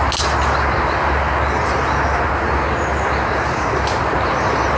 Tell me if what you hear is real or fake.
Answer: real